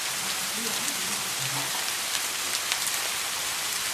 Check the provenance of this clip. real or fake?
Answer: real